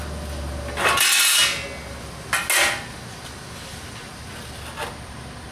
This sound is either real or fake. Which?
real